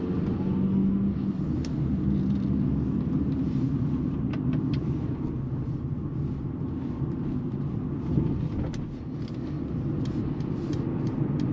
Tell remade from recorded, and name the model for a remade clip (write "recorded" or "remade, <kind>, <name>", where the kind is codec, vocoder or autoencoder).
recorded